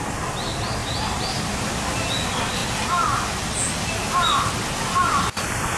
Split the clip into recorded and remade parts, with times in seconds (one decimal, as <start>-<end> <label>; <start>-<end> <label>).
0.0-0.8 recorded; 0.8-1.6 remade; 1.6-5.8 recorded